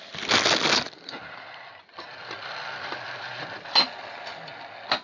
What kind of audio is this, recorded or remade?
recorded